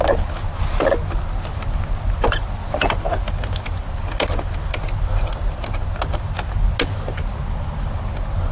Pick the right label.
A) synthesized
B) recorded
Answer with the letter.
B